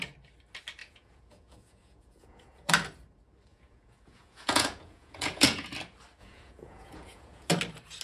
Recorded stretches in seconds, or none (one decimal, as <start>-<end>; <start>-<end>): 0.0-0.8; 2.7-3.5; 5.7-6.2; 7.5-8.0

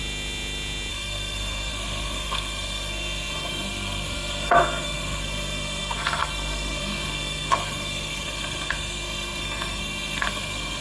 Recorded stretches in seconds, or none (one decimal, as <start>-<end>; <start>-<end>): 0.0-0.9

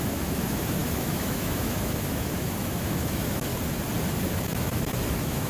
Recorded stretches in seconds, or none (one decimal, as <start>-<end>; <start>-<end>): 3.5-4.2

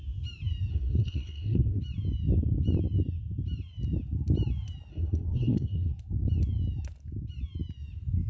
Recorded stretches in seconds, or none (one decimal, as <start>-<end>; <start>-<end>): 0.0-0.7; 1.8-4.9; 5.9-8.3